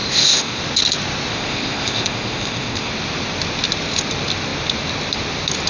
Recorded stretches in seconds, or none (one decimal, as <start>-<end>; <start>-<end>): 0.6-1.3; 2.9-5.7